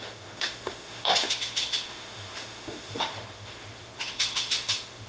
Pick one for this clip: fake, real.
fake